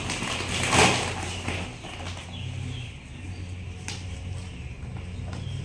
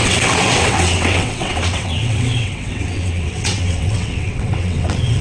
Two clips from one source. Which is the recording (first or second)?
first